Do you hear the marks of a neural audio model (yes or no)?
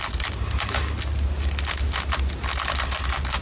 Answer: no